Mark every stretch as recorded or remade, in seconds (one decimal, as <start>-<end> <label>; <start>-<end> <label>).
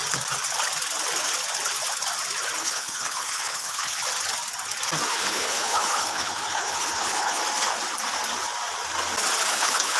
0.0-2.6 recorded; 2.6-4.0 remade; 4.0-5.1 recorded; 5.1-7.4 remade; 7.4-9.5 recorded; 9.5-10.0 remade